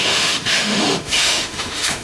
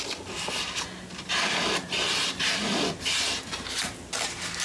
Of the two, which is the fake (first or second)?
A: first